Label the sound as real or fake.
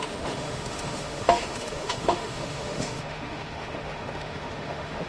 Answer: fake